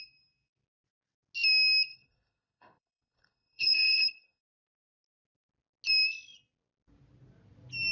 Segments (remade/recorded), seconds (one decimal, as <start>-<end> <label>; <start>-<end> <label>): 0.0-1.9 recorded; 1.9-4.4 remade; 4.4-7.9 recorded